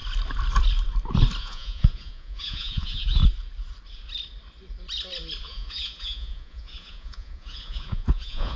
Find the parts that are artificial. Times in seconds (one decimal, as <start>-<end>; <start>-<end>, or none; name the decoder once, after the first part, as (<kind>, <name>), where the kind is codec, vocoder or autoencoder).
1.4-3.2 (vocoder, Vocos); 5.4-8.6